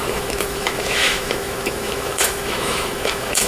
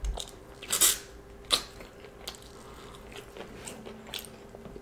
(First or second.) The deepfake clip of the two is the first